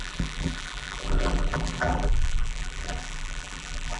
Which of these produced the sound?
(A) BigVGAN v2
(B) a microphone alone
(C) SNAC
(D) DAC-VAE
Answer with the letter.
A